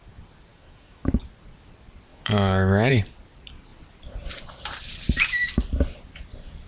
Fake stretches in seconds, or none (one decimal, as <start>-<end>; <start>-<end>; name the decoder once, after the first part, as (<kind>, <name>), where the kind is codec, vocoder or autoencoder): 0.5-1.2 (autoencoder, DAC-VAE); 2.1-2.9